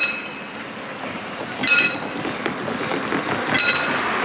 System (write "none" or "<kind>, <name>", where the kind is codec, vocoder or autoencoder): none